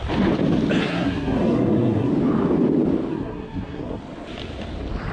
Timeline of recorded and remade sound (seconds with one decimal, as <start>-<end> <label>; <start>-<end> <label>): 0.0-0.8 recorded; 0.8-2.1 remade; 2.1-3.1 recorded; 3.1-4.0 remade; 4.0-5.1 recorded